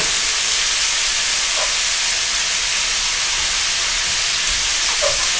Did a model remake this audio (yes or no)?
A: no